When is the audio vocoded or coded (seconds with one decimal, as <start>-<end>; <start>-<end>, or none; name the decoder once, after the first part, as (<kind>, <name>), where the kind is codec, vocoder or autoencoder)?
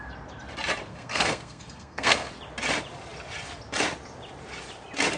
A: 0.9-2.3 (codec, SNAC)